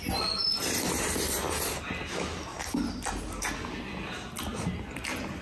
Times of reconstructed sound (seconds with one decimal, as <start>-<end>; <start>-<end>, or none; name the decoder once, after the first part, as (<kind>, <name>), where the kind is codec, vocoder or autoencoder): none